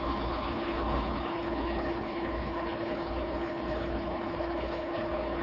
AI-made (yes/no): yes